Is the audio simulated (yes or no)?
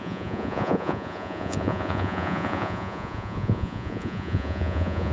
yes